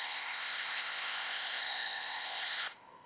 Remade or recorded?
remade